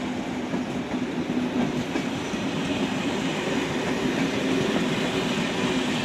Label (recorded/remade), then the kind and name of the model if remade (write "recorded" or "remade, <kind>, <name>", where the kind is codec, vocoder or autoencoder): recorded